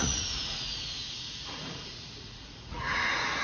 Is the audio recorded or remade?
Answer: remade